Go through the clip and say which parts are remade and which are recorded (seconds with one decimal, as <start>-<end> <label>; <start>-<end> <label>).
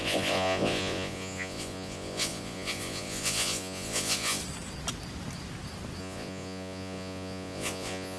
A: 0.0-4.4 remade; 4.4-6.0 recorded; 6.0-8.2 remade